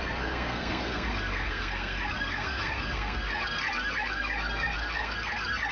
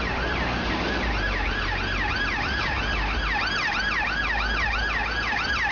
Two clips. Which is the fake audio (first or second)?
first